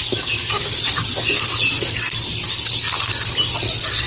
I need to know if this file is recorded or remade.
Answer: recorded